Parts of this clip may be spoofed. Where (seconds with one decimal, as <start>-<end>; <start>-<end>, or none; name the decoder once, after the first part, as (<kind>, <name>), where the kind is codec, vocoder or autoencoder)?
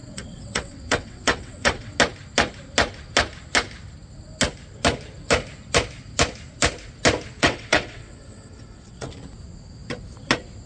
0.0-2.0 (vocoder, WaveNeXt); 7.4-9.1